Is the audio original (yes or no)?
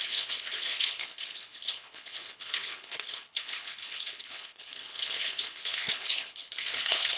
no